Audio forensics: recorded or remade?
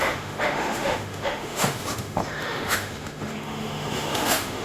remade